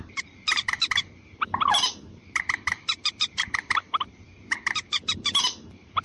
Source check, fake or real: fake